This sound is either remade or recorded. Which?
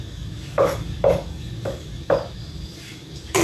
remade